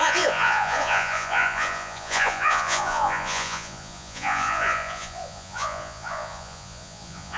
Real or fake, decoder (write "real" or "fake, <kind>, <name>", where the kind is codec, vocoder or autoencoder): fake, vocoder, Vocos